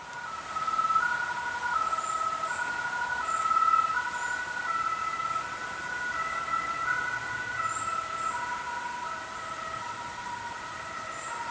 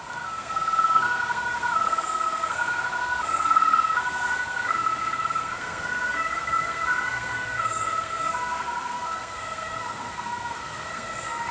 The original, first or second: first